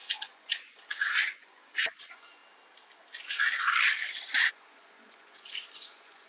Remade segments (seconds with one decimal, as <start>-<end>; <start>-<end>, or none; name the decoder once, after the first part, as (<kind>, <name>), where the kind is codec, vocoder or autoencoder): 0.0-2.4 (vocoder, Vocos); 4.5-6.3